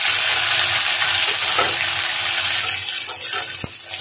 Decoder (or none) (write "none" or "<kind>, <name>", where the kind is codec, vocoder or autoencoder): none